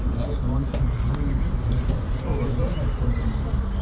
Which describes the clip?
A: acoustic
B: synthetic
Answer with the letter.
A